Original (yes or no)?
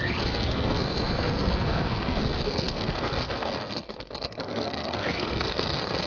no